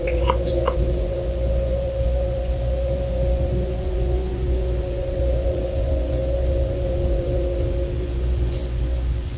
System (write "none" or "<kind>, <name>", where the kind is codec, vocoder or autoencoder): vocoder, Vocos